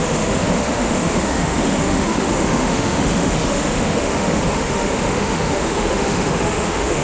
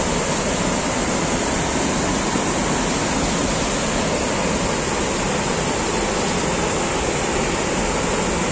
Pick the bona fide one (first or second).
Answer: second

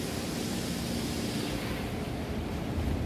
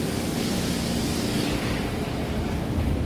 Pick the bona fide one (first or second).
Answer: first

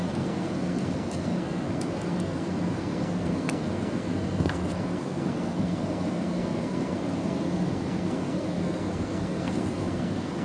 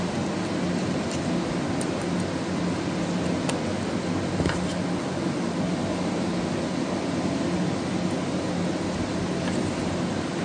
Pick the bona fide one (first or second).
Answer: second